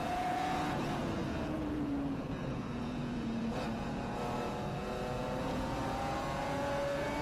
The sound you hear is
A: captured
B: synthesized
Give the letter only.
B